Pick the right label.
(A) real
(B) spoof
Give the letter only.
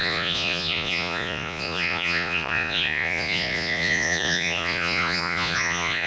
B